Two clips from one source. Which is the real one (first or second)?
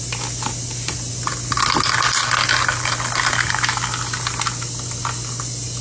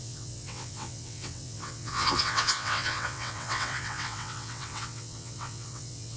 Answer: first